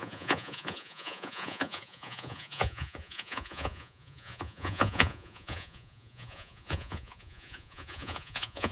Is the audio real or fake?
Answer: fake